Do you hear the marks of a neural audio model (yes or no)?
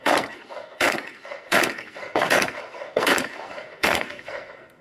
yes